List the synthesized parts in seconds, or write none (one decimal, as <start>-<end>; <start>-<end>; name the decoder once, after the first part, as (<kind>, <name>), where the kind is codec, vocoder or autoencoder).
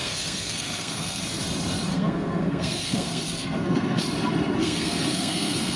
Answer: 0.0-1.2 (codec, SNAC); 1.9-4.0; 4.6-5.8